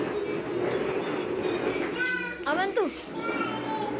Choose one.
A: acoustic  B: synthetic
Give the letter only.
A